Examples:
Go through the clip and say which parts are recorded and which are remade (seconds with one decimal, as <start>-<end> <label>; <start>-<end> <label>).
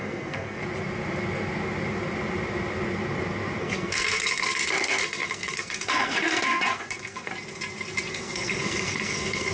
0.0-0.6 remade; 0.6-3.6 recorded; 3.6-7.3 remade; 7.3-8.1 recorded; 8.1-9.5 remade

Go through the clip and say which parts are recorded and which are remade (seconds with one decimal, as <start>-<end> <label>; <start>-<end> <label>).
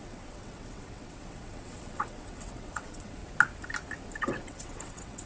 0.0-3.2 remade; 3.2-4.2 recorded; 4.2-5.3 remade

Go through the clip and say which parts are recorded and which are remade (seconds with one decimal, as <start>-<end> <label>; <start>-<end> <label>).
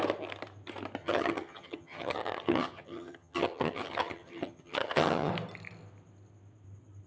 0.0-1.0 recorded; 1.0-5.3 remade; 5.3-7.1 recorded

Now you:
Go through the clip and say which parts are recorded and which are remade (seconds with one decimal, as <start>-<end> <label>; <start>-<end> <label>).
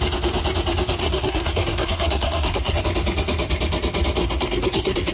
0.0-1.0 recorded; 1.0-2.8 remade; 2.8-4.2 recorded; 4.2-5.1 remade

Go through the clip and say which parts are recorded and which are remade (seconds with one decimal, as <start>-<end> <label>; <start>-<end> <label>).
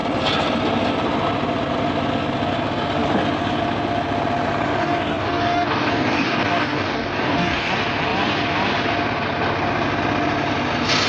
0.0-4.7 recorded; 4.7-7.7 remade; 7.7-11.1 recorded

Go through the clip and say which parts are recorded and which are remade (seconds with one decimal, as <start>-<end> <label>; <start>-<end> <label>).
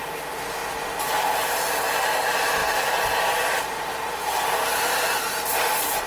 0.0-0.6 remade; 0.6-1.1 recorded; 1.1-6.1 remade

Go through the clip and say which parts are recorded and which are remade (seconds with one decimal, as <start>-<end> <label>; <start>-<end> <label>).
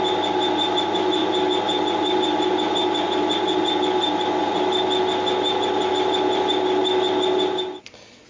0.0-8.3 recorded